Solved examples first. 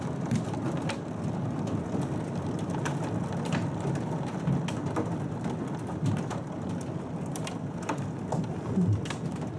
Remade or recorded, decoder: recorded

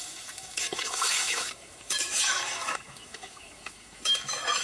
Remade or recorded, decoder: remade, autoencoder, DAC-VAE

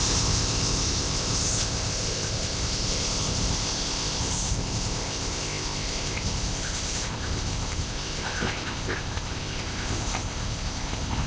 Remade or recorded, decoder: remade, codec, ZipCodec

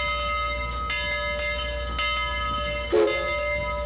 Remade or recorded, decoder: recorded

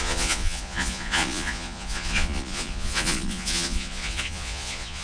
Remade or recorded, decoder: remade, vocoder, Vocos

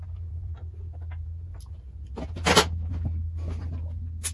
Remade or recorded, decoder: recorded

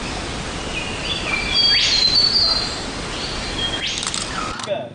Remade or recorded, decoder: recorded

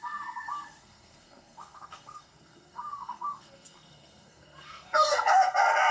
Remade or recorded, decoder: remade, codec, SNAC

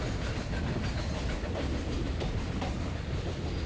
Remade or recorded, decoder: recorded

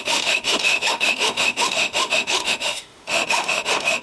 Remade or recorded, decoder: remade, autoencoder, DAC-VAE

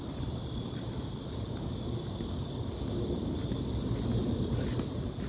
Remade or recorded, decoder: recorded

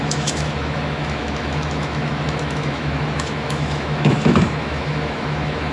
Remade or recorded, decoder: remade, autoencoder, DAC-VAE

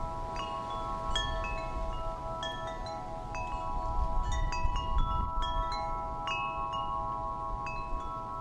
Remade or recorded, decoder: recorded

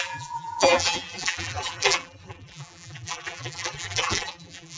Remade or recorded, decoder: remade, vocoder, BigVGAN v2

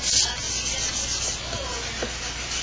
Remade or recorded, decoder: recorded